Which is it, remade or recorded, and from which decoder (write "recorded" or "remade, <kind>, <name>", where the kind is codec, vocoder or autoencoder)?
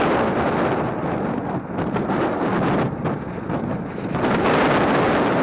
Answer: recorded